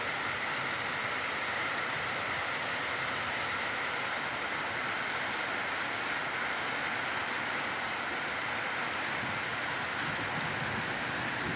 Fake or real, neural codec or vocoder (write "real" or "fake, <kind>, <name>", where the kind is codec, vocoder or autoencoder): real